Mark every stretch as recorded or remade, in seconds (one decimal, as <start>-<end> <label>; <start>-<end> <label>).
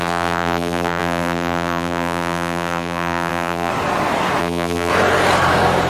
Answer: 0.0-3.7 remade; 3.7-4.4 recorded; 4.4-4.9 remade; 4.9-5.9 recorded